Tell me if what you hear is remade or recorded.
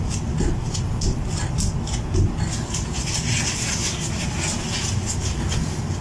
recorded